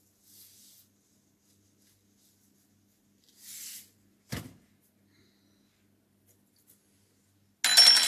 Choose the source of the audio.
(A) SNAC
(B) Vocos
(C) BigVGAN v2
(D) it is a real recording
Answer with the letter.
D